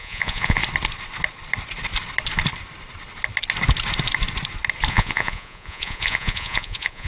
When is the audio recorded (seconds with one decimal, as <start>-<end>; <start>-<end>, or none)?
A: 0.6-4.9